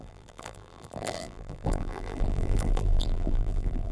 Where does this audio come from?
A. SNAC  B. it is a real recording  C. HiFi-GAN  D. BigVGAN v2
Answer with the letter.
D